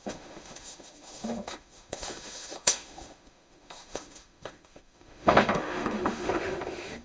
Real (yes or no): no